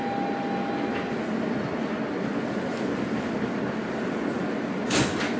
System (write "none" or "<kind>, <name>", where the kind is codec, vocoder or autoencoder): none